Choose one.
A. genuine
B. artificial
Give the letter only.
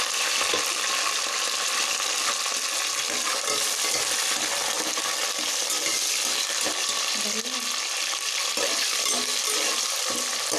A